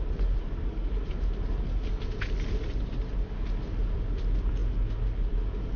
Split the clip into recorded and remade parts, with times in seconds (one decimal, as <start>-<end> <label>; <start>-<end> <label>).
0.0-5.8 recorded